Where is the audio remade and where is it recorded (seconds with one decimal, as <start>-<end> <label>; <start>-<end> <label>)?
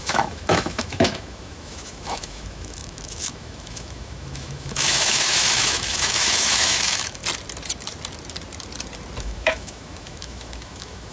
0.0-7.2 remade; 7.2-9.2 recorded; 9.2-11.1 remade